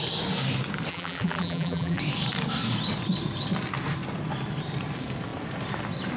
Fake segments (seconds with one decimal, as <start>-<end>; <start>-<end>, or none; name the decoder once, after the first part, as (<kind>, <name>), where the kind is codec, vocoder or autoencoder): 0.9-2.0 (vocoder, BigVGAN v2)